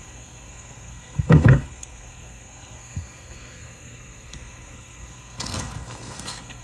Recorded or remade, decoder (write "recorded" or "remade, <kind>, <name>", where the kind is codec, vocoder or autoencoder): remade, codec, SNAC